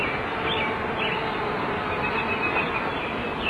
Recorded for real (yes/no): yes